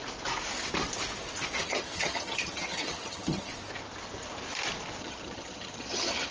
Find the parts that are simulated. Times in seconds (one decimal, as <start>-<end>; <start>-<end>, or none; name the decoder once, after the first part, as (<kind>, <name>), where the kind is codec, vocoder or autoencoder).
1.6-3.5 (vocoder, HiFi-GAN); 5.0-6.3